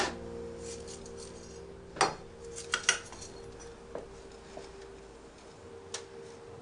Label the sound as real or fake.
real